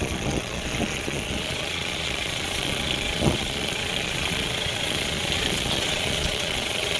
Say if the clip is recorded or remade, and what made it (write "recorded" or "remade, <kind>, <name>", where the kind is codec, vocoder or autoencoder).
remade, vocoder, Vocos